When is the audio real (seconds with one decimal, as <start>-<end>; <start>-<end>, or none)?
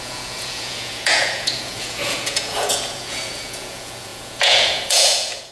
none